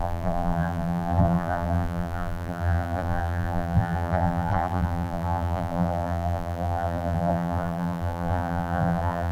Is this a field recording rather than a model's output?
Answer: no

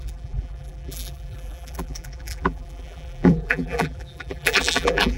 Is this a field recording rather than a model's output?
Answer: no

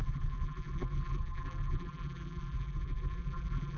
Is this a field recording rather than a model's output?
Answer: no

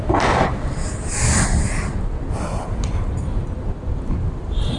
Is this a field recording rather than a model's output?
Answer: yes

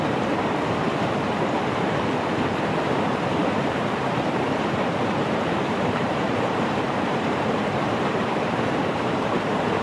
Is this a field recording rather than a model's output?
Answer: no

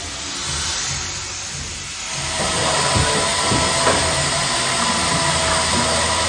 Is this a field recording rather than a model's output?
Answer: yes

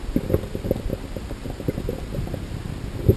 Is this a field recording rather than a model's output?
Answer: yes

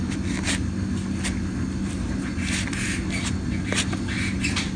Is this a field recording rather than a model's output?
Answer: yes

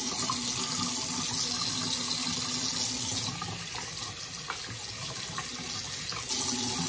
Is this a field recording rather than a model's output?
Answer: yes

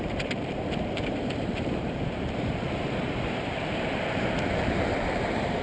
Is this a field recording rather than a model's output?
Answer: no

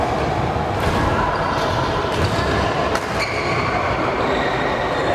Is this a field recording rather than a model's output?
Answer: no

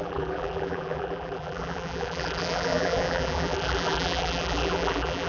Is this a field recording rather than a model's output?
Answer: no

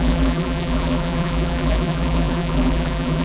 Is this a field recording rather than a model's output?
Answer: no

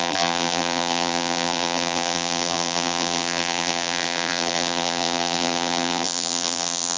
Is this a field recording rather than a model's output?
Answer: no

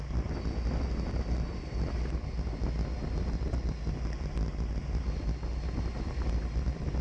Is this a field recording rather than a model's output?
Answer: yes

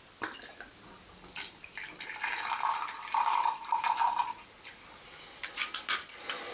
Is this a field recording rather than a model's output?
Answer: yes